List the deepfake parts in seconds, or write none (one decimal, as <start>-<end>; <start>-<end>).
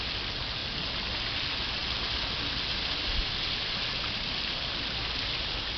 none